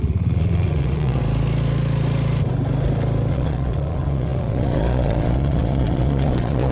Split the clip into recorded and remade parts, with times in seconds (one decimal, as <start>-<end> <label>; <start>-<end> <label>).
0.0-1.2 remade; 1.2-3.3 recorded; 3.3-6.7 remade